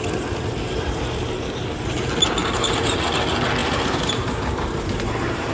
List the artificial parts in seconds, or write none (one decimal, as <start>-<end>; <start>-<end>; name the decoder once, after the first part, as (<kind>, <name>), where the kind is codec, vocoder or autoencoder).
2.4-3.0 (vocoder, BigVGAN v2); 3.6-5.5